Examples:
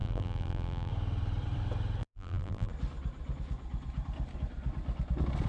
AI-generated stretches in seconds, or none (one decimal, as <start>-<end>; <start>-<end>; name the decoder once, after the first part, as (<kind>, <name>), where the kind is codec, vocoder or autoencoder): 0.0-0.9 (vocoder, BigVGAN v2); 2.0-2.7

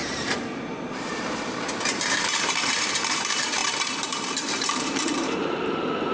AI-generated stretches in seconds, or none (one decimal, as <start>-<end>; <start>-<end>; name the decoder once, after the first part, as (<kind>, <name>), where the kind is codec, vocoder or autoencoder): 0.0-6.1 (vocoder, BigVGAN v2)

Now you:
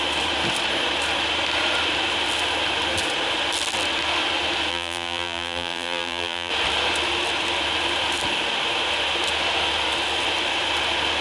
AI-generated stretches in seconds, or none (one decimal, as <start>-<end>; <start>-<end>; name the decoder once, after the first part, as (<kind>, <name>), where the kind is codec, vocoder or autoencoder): 4.7-6.5 (vocoder, BigVGAN v2)

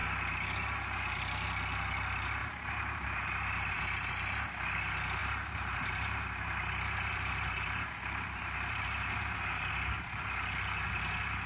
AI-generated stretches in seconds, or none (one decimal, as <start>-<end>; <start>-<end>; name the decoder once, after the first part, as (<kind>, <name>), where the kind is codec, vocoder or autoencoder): 2.4-3.8 (vocoder, BigVGAN v2); 5.2-9.7

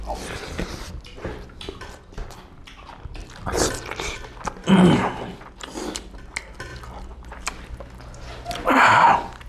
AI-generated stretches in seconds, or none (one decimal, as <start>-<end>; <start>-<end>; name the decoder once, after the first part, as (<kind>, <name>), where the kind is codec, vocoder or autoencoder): none